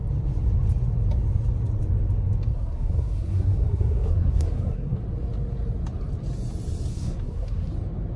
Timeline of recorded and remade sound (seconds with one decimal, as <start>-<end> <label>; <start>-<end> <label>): 0.0-2.5 recorded; 2.5-5.0 remade; 5.0-6.9 recorded; 6.9-7.7 remade; 7.7-8.2 recorded